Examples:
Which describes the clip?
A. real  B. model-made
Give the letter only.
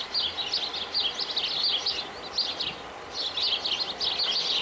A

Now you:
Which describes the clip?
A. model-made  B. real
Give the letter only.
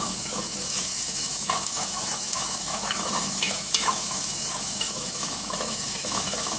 A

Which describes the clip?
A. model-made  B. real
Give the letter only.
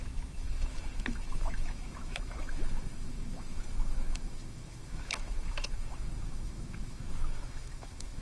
A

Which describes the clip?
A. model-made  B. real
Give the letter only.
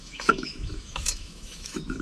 A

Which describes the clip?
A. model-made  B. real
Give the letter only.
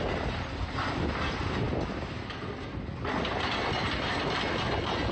B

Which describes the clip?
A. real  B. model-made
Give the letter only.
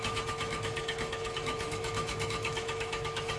B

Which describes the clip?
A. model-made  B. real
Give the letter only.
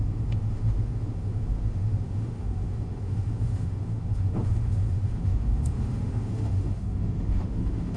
A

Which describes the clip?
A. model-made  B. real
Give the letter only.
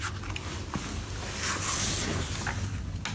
B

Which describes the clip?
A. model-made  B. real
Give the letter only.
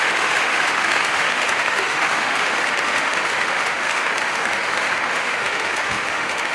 A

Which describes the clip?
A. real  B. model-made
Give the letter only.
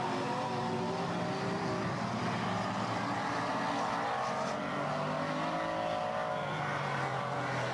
A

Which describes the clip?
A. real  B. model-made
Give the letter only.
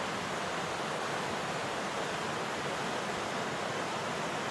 A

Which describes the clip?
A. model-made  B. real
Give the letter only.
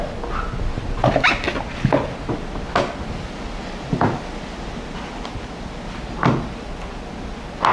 B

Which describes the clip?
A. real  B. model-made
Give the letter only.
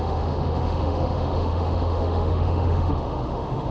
B